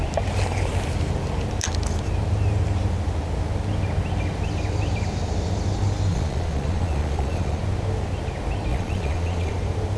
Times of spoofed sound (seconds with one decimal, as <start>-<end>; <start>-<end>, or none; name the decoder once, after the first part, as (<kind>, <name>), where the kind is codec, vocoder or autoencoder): 6.1-7.6 (vocoder, Vocos); 8.7-9.5